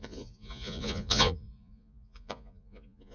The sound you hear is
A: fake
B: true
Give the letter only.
A